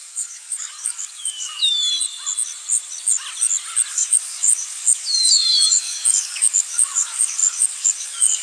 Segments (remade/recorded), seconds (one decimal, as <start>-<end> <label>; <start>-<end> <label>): 0.0-1.9 remade; 1.9-3.9 recorded; 3.9-8.4 remade